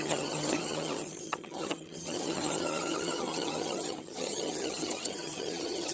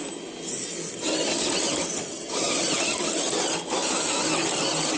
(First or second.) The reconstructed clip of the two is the first